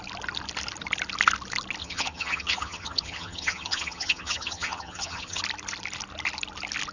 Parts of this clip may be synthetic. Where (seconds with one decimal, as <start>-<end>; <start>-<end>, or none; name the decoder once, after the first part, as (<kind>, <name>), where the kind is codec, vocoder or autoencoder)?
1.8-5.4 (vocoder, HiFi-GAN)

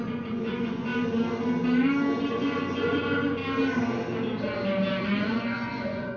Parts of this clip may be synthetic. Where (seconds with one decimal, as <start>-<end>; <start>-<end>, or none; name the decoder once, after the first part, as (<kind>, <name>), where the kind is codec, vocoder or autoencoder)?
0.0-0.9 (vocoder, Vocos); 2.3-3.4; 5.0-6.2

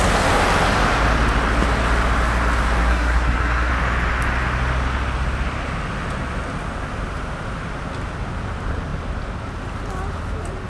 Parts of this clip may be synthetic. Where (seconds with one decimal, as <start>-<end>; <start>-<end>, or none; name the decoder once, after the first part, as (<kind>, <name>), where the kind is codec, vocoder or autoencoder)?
2.8-3.7 (codec, SNAC)

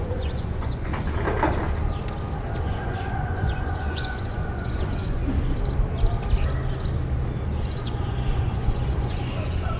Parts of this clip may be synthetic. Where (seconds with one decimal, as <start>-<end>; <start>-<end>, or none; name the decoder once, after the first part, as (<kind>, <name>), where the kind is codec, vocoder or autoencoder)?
0.0-0.9 (vocoder, Vocos); 2.6-5.2; 7.6-9.8

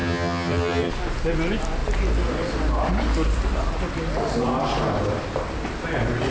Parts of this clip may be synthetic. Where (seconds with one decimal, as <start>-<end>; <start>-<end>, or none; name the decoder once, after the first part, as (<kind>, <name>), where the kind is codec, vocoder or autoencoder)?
0.0-0.9 (vocoder, HiFi-GAN)

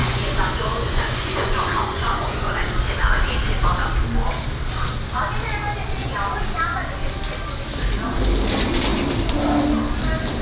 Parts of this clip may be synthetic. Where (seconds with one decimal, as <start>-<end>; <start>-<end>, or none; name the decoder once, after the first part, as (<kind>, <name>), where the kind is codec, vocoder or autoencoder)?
0.0-2.6 (vocoder, Vocos)

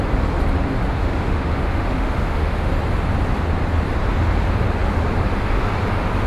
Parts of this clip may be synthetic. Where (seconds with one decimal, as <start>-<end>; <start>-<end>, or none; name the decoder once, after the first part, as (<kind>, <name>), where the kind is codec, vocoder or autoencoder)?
0.9-2.7 (autoencoder, DAC-VAE)